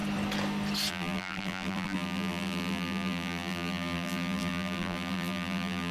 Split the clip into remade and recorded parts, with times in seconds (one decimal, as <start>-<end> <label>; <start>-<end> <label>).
0.0-0.9 recorded; 0.9-5.9 remade